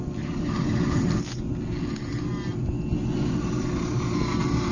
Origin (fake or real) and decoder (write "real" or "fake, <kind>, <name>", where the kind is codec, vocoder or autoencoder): real